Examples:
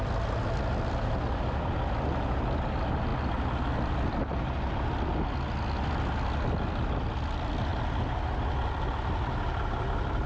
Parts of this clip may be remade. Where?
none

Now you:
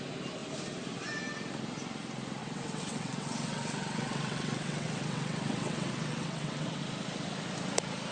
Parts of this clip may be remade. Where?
2.4-6.8 (vocoder, WaveNeXt)

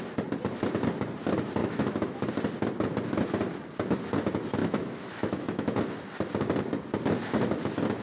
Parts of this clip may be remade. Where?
1.6-2.3 (autoencoder, DAC-VAE); 4.6-5.8

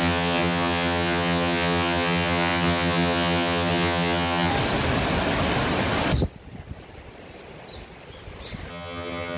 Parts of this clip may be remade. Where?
0.0-4.5 (vocoder, HiFi-GAN); 8.7-9.4

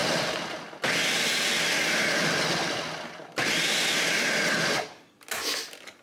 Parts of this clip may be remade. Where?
none

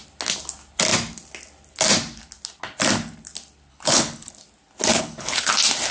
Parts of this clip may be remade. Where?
3.7-4.3 (codec, HILCodec); 4.9-5.5